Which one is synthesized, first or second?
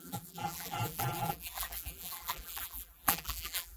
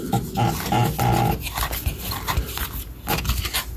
first